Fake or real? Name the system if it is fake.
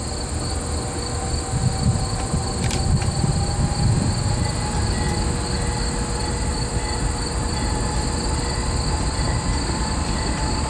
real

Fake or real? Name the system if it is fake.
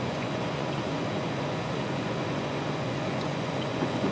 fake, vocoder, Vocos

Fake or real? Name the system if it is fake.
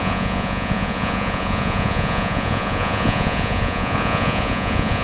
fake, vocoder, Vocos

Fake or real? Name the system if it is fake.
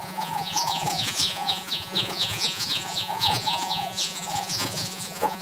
fake, vocoder, Vocos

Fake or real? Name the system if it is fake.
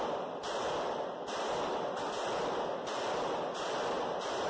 real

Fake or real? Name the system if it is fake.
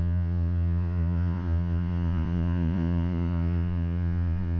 fake, vocoder, Vocos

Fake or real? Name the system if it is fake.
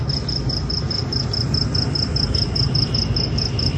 real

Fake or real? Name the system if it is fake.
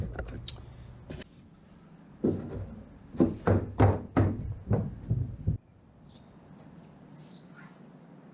real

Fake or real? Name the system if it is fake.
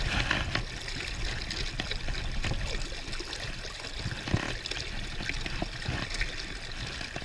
real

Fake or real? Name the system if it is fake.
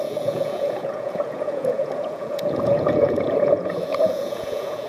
fake, vocoder, Vocos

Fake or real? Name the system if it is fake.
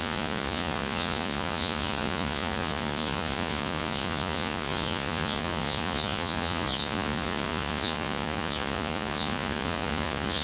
fake, vocoder, Vocos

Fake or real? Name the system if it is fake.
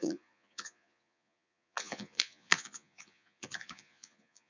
fake, vocoder, Vocos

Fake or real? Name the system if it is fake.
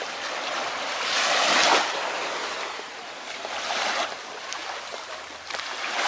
real